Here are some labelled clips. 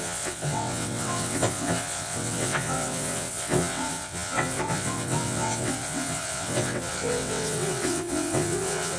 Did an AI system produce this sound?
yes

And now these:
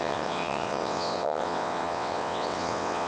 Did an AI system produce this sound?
yes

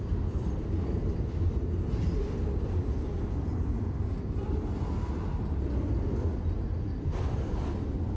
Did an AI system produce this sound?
no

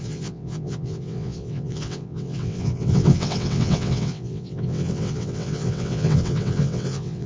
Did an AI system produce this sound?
yes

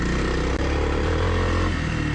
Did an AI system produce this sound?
no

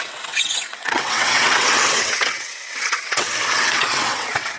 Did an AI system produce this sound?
yes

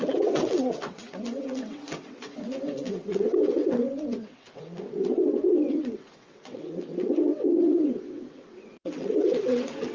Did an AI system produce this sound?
yes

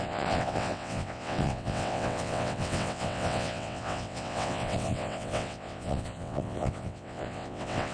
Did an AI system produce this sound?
yes